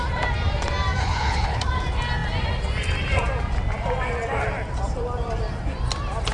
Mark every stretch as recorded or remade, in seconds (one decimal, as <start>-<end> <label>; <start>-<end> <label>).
0.0-1.0 recorded; 1.0-1.6 remade; 1.6-6.3 recorded